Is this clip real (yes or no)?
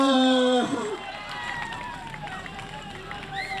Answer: no